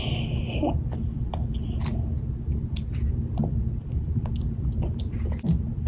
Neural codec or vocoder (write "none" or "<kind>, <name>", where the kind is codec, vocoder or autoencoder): none